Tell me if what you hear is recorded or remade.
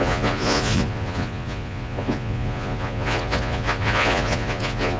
remade